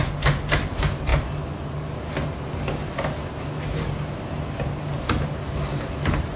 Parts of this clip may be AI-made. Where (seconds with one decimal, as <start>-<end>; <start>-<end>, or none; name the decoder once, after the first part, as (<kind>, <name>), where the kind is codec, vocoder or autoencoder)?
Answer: none